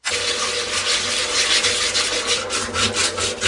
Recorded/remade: recorded